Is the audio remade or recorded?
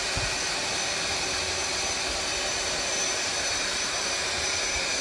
remade